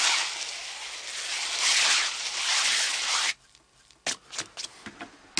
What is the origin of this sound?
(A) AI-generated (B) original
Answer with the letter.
B